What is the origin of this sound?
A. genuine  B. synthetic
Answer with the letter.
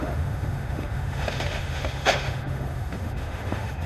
B